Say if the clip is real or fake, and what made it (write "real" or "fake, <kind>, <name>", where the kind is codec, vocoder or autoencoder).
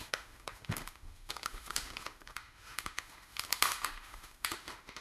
fake, autoencoder, DAC-VAE